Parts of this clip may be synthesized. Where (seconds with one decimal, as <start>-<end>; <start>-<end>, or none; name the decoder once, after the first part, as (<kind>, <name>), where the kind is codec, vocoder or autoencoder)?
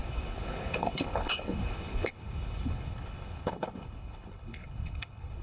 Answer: 0.0-5.4 (codec, HILCodec)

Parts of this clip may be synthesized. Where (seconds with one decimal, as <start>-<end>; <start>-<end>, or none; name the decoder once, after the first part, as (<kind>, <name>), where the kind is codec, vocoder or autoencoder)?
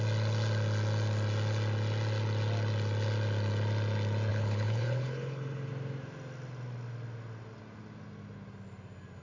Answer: 4.3-5.7 (codec, HILCodec)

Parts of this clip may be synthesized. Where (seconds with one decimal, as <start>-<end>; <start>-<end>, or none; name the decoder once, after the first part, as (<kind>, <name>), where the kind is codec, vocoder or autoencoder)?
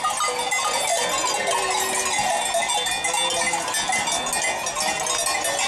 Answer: none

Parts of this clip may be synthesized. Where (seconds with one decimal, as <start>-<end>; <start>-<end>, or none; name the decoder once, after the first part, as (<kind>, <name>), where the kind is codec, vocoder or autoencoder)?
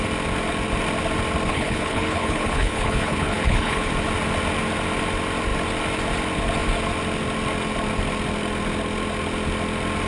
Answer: 1.5-3.9 (codec, HILCodec)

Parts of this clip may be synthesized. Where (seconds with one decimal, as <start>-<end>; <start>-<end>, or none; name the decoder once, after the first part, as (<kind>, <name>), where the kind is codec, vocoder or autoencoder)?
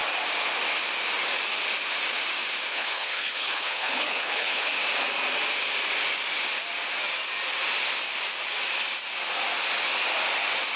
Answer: 2.7-4.7 (codec, HILCodec)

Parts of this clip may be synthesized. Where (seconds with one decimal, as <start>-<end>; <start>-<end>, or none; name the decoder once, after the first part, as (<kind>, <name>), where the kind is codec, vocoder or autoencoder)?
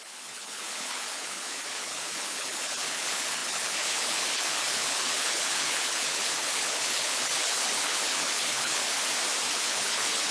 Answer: 0.0-8.9 (codec, HILCodec); 9.5-10.3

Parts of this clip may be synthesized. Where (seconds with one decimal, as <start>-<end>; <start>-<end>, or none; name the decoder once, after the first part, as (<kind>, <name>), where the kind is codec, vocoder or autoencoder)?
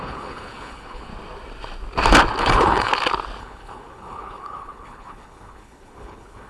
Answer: 0.0-1.1 (codec, HILCodec); 2.4-2.9; 3.4-6.5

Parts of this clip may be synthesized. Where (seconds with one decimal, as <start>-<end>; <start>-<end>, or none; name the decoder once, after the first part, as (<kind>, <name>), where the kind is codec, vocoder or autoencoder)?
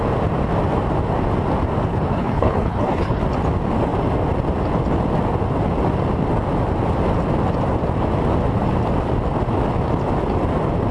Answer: 1.9-3.2 (codec, HILCodec)